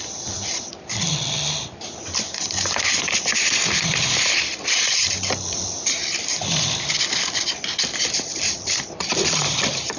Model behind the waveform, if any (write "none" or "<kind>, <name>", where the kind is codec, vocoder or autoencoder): vocoder, BigVGAN v2